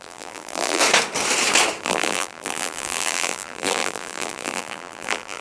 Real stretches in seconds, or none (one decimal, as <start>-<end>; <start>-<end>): 0.8-1.8